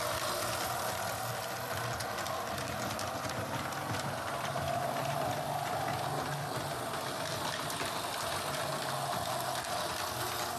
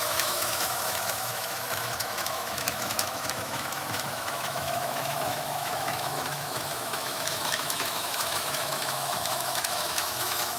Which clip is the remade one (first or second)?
second